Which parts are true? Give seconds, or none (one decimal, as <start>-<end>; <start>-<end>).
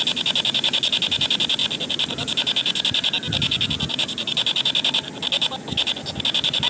0.0-6.7